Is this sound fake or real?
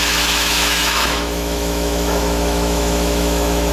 fake